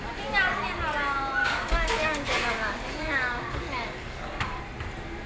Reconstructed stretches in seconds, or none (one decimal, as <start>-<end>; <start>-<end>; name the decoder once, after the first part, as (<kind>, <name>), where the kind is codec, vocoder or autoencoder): 1.4-4.6 (codec, DAC)